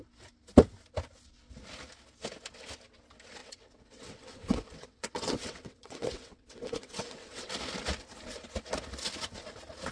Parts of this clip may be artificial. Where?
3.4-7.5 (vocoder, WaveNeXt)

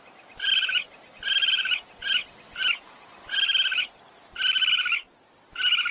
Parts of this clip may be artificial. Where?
none